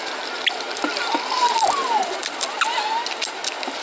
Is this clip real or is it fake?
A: real